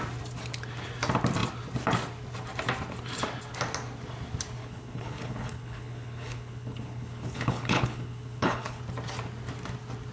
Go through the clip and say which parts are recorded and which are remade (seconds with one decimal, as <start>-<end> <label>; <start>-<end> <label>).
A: 0.0-4.6 recorded; 4.6-8.8 remade; 8.8-10.1 recorded